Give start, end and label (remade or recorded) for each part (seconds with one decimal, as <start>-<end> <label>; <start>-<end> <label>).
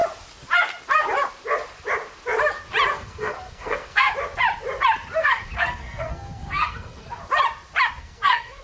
0.0-2.9 recorded; 2.9-4.1 remade; 4.1-5.2 recorded; 5.2-7.2 remade; 7.2-8.0 recorded; 8.0-8.6 remade